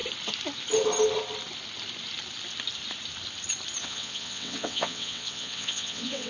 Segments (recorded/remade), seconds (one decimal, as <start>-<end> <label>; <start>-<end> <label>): 0.0-3.8 recorded; 3.8-6.3 remade